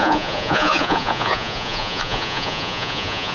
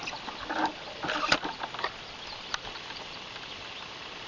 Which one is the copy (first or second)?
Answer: first